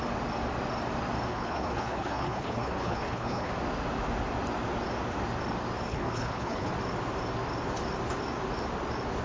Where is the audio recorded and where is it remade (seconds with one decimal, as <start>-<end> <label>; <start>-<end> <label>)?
0.0-1.3 recorded; 1.3-3.5 remade; 3.5-5.9 recorded; 5.9-6.7 remade; 6.7-9.2 recorded